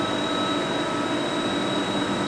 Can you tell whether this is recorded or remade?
recorded